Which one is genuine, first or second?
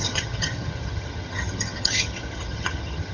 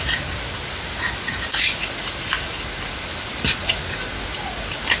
second